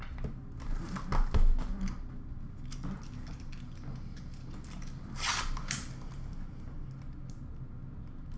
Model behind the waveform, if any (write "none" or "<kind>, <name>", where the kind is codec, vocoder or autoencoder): none